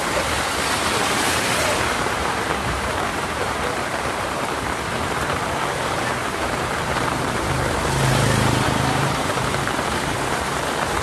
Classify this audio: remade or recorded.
remade